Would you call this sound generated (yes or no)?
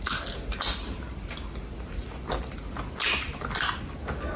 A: no